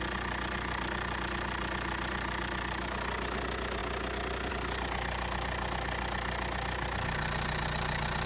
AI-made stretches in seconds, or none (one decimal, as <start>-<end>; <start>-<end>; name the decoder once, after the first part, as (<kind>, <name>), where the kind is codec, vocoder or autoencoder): none